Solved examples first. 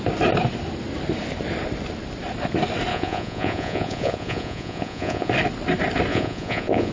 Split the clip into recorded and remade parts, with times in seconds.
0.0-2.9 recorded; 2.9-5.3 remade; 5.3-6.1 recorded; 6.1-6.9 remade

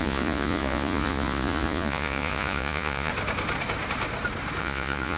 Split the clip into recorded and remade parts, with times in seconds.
0.0-3.1 remade; 3.1-4.6 recorded; 4.6-5.2 remade

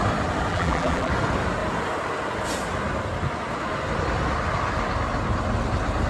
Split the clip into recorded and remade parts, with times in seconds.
0.0-0.5 recorded; 0.5-1.1 remade; 1.1-6.1 recorded